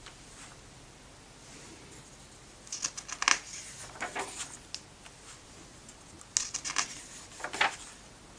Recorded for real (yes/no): yes